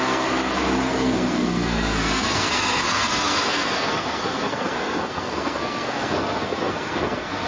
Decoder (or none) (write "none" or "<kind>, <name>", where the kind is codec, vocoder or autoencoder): codec, SNAC